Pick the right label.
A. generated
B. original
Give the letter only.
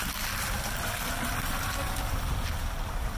B